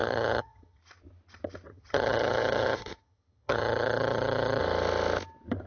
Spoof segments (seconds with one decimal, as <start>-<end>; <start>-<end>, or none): 0.0-0.8; 1.7-4.6